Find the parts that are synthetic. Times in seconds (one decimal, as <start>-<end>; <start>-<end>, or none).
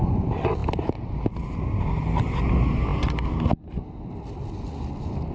none